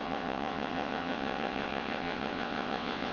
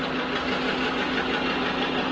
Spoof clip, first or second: first